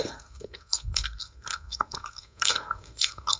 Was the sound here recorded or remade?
remade